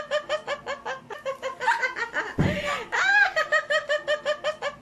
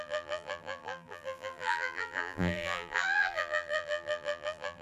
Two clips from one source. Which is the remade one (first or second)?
second